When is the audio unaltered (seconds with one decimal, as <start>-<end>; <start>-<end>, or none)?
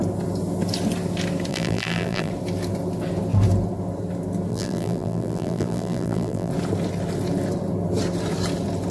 0.0-1.5; 2.3-4.5; 6.5-8.9